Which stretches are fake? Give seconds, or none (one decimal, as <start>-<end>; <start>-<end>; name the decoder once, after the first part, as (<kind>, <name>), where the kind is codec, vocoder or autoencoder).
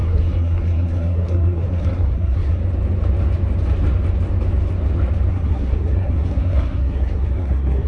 0.0-2.6 (codec, SNAC); 5.3-7.9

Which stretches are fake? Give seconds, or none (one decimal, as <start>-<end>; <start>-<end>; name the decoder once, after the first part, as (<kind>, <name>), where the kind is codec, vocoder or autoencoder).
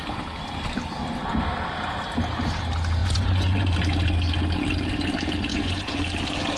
3.0-3.7 (vocoder, Vocos); 5.5-6.0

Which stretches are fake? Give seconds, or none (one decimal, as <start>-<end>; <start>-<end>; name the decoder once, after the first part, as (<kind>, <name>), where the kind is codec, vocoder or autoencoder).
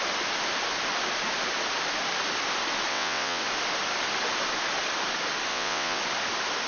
2.9-3.4 (vocoder, WaveNeXt); 5.5-6.0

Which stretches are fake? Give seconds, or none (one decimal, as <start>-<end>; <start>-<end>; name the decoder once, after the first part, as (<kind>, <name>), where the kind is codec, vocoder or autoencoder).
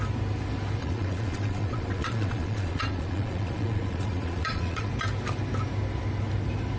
0.8-4.9 (vocoder, Vocos)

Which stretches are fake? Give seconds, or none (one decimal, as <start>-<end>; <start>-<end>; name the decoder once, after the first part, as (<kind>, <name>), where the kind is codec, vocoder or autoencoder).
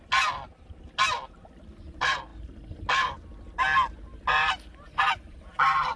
none